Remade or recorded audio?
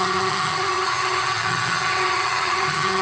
remade